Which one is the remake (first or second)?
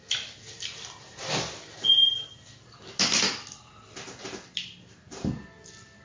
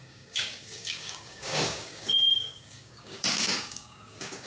second